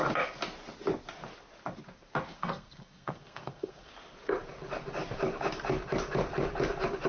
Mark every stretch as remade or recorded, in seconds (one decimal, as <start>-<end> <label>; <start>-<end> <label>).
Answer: 0.0-2.3 recorded; 2.3-3.9 remade; 3.9-7.1 recorded

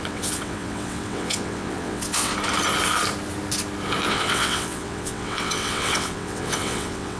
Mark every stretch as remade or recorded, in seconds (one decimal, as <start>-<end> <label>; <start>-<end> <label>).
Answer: 0.0-2.3 remade; 2.3-4.1 recorded; 4.1-7.2 remade

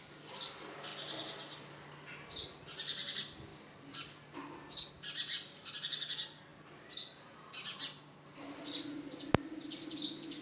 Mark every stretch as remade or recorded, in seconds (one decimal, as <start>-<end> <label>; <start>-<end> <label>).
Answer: 0.0-10.4 recorded

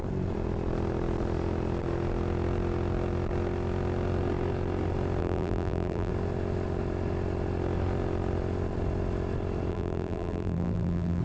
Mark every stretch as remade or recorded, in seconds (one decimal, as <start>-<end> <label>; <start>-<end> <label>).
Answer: 0.0-5.2 recorded; 5.2-6.1 remade; 6.1-9.7 recorded; 9.7-11.2 remade

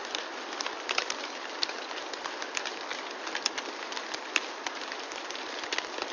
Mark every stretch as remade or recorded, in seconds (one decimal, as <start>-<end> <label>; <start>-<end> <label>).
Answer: 0.0-6.1 recorded

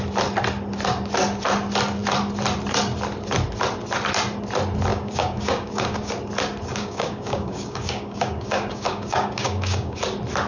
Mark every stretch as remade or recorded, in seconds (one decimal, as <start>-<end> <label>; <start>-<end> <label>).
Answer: 0.0-4.9 recorded; 4.9-6.1 remade; 6.1-6.7 recorded; 6.7-10.0 remade; 10.0-10.5 recorded

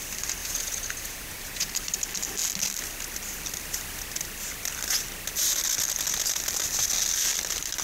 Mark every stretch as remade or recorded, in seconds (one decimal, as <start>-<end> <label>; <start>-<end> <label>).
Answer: 0.0-0.4 recorded; 0.4-1.7 remade; 1.7-7.8 recorded

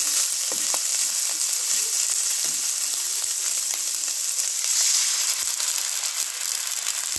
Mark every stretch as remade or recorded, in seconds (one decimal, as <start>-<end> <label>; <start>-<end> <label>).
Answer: 0.0-7.2 recorded